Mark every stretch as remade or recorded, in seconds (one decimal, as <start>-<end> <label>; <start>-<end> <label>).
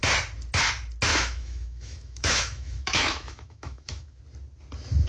0.0-1.1 recorded; 1.1-4.2 remade; 4.2-5.1 recorded